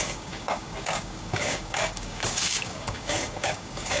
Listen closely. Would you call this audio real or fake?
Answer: fake